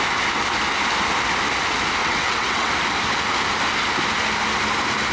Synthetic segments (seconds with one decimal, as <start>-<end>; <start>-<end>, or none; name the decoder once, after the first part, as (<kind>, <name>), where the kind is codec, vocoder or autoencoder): 2.0-2.7 (vocoder, WaveNeXt)